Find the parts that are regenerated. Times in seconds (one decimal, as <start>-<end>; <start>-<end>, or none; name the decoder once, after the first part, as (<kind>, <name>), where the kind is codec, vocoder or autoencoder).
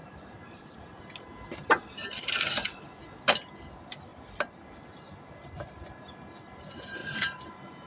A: 0.0-1.0 (vocoder, BigVGAN v2); 7.0-7.9